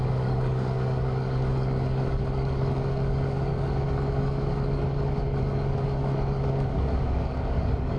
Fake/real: fake